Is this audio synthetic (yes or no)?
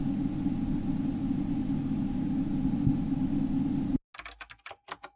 no